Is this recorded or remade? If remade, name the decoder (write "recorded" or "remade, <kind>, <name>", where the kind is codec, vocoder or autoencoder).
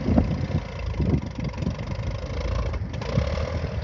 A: recorded